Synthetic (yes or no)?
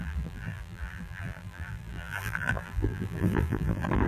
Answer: yes